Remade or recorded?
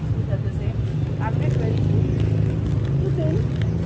recorded